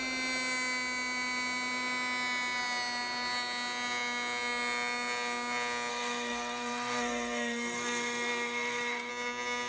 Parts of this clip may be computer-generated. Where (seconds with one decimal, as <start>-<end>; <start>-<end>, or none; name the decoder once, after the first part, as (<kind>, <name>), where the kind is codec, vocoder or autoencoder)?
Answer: 5.9-9.1 (codec, SNAC)